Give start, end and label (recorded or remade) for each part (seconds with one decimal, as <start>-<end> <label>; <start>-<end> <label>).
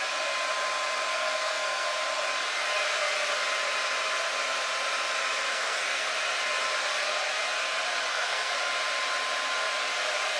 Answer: 0.0-1.1 recorded; 1.1-2.0 remade; 2.0-5.5 recorded; 5.5-6.1 remade; 6.1-8.1 recorded; 8.1-8.6 remade; 8.6-10.4 recorded